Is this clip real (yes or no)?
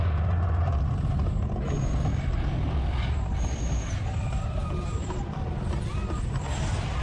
yes